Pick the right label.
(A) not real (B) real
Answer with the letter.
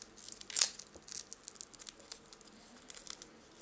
B